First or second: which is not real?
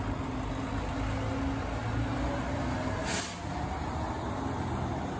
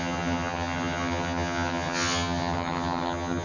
second